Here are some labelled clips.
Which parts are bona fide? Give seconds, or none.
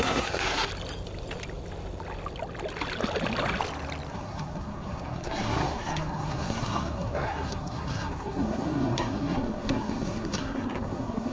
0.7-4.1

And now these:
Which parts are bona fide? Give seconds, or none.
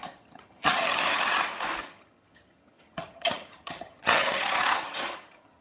1.4-1.8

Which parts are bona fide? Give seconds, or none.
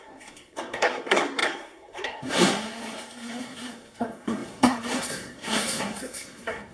none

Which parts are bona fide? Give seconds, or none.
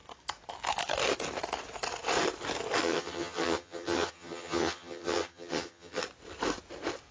0.0-2.8; 6.0-7.1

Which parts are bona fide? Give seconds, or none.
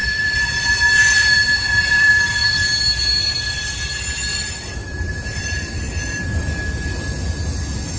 2.6-4.3; 6.3-8.0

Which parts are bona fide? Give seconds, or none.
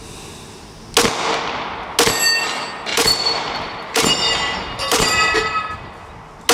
0.0-2.9; 5.3-6.5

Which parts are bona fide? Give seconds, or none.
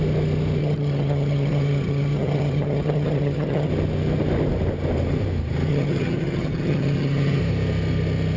0.0-0.6; 3.7-5.7; 7.4-8.4